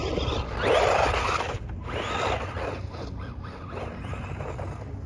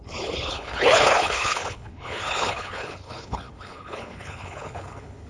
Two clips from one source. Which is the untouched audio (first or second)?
first